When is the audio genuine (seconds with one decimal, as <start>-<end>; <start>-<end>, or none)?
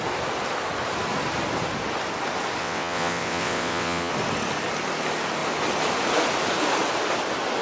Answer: 0.0-2.6; 4.1-7.6